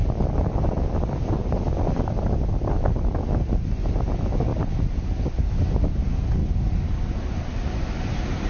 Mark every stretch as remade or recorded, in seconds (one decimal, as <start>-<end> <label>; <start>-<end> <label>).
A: 0.0-1.5 remade; 1.5-6.4 recorded; 6.4-8.0 remade; 8.0-8.5 recorded